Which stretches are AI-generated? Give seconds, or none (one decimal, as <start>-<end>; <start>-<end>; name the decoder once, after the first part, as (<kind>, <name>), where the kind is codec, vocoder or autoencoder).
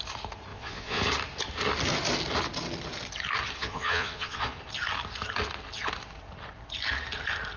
0.5-1.0 (vocoder, Vocos); 3.6-4.6